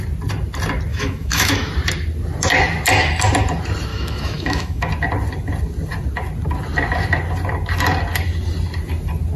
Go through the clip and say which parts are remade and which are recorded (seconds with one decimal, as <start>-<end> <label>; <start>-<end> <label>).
0.0-0.9 recorded; 0.9-1.7 remade; 1.7-3.9 recorded; 3.9-4.9 remade; 4.9-9.4 recorded